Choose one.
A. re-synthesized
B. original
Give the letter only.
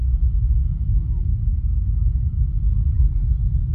B